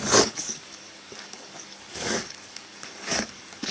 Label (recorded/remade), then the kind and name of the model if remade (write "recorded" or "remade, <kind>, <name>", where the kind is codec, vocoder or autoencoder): remade, codec, DAC